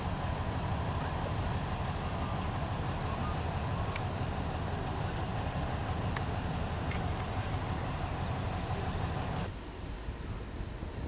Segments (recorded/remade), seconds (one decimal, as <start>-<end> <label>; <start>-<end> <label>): 0.0-11.1 recorded